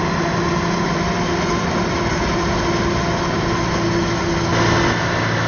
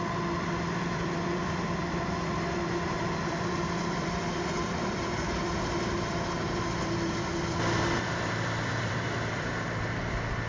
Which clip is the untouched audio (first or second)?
first